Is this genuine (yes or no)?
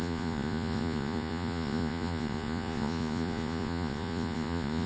no